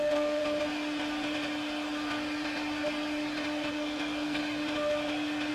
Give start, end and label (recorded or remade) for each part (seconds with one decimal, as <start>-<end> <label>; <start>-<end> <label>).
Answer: 0.0-0.4 remade; 0.4-3.7 recorded; 3.7-4.4 remade; 4.4-5.5 recorded